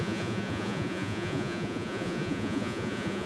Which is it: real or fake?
fake